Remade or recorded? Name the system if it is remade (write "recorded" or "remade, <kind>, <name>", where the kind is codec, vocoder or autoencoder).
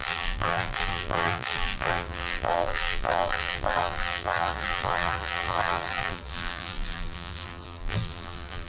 remade, vocoder, BigVGAN v2